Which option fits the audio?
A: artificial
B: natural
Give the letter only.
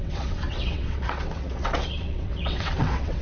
A